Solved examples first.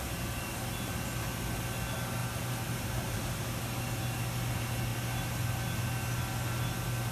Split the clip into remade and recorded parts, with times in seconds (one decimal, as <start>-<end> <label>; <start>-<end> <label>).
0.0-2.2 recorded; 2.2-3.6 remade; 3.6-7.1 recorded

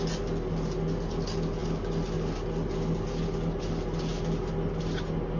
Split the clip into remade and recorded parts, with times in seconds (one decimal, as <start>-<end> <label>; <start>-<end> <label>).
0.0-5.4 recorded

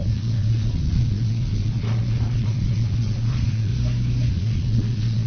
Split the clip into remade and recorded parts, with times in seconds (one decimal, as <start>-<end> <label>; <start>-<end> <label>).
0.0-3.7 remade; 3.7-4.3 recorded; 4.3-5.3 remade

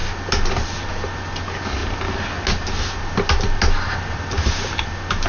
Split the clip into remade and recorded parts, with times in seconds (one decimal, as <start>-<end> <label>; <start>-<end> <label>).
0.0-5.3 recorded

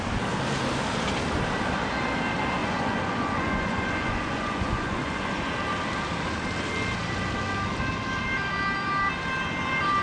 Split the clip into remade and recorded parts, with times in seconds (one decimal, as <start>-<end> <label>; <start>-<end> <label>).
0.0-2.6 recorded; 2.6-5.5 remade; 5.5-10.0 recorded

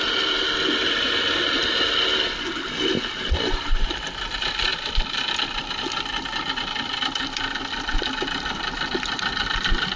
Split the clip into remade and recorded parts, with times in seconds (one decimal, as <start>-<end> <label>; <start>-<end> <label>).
0.0-1.6 remade; 1.6-10.0 recorded

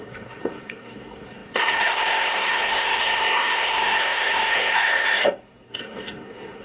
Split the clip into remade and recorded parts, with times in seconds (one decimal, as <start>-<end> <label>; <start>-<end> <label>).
0.0-6.6 remade